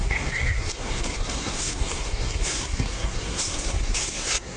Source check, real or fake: fake